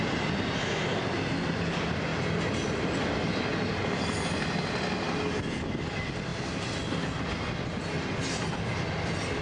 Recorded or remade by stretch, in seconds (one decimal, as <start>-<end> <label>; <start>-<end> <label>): 0.0-9.4 recorded